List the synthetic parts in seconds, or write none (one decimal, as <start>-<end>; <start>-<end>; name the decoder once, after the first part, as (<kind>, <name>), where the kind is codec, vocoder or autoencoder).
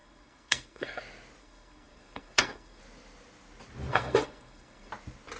0.0-1.0 (codec, SNAC); 1.4-2.8; 3.9-4.9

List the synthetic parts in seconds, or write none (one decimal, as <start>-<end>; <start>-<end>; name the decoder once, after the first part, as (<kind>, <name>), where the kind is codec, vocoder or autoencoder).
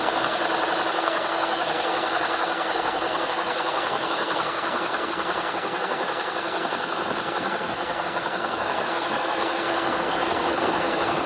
0.0-0.4 (codec, SNAC); 0.9-11.3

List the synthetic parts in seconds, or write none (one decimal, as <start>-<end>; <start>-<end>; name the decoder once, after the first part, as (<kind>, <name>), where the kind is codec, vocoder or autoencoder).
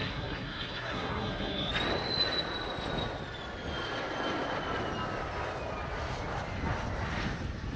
0.0-1.7 (codec, SNAC)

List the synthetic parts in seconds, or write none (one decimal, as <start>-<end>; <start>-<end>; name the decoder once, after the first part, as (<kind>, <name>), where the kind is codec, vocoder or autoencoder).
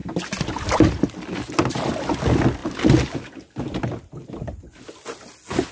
none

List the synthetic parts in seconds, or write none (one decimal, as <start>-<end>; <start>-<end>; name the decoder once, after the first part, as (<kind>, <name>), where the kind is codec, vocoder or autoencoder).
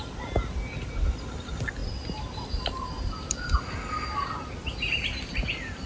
none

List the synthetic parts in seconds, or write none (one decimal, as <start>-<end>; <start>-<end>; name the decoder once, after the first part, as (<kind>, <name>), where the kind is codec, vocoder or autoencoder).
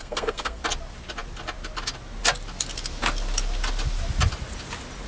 0.0-0.6 (codec, SNAC)